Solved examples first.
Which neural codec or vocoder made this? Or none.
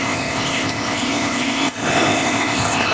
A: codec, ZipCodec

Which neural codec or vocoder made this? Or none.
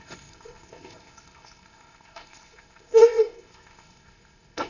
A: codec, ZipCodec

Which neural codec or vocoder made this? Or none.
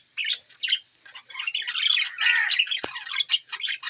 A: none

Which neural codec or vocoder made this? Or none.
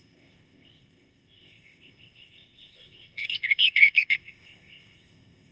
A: codec, ZipCodec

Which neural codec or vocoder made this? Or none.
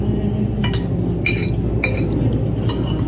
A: none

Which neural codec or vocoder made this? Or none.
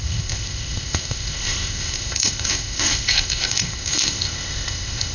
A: codec, ZipCodec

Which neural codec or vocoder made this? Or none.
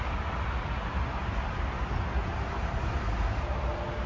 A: none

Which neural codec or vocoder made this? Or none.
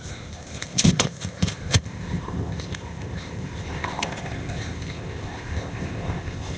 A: codec, ZipCodec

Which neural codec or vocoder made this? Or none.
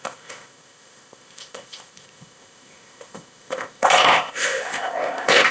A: codec, ZipCodec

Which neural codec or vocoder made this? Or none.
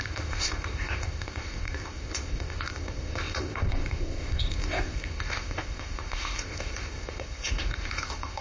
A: codec, ZipCodec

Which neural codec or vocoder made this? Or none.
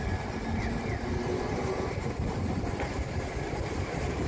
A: none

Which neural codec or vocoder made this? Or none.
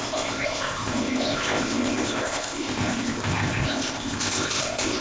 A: codec, ZipCodec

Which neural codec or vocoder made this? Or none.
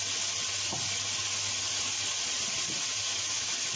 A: none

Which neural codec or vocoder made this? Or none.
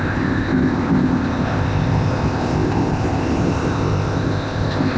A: codec, ZipCodec